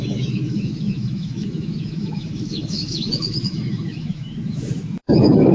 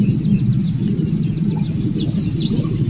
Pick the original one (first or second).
second